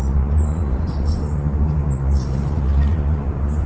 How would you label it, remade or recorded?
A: remade